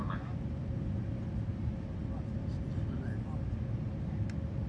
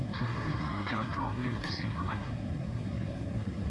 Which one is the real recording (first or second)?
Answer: first